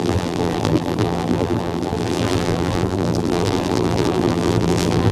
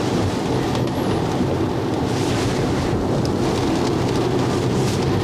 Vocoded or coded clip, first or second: first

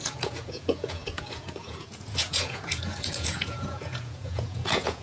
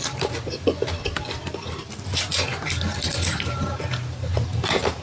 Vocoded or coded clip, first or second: first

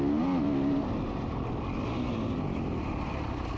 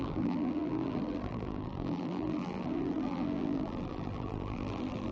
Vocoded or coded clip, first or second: second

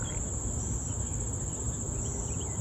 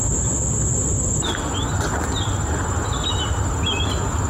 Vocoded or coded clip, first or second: second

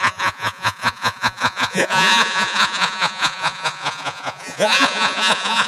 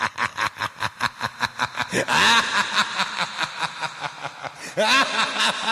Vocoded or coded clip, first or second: first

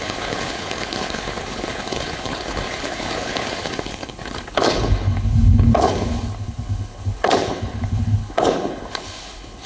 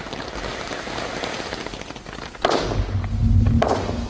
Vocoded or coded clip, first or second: first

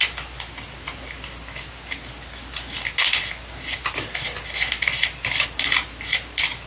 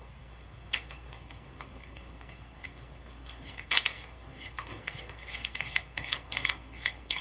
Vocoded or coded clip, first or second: second